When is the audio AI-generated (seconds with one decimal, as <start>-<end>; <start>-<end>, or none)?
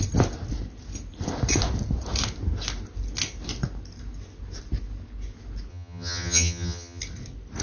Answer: 5.7-7.0